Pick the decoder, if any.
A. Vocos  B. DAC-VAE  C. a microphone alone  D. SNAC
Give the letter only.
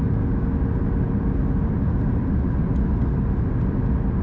C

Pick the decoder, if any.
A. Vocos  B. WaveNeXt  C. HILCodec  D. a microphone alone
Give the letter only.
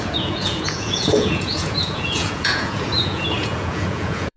A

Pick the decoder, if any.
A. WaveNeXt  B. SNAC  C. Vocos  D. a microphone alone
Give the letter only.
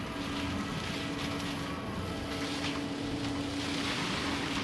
D